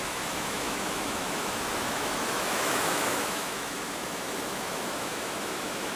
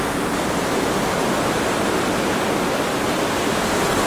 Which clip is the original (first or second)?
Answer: second